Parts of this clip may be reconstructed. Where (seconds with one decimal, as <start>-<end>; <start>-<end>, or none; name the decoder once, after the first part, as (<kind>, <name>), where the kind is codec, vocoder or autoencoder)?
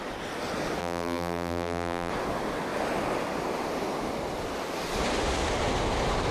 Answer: 0.8-2.1 (vocoder, BigVGAN v2)